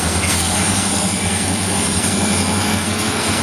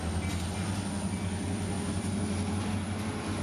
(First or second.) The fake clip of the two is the first